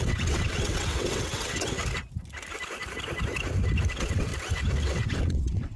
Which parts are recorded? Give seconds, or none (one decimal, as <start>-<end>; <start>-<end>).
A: 1.8-3.9; 4.3-4.8